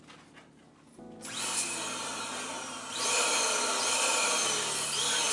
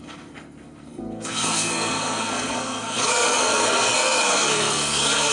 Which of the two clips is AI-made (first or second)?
second